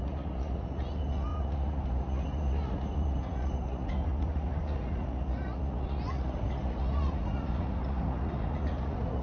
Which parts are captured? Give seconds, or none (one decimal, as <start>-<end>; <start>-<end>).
none